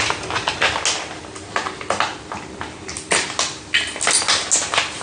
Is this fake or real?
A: real